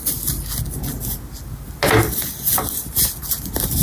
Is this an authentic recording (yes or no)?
yes